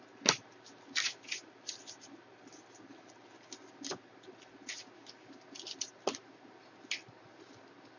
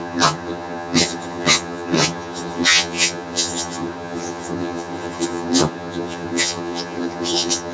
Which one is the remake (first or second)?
second